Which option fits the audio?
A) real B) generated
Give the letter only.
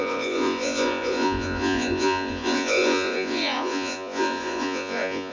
B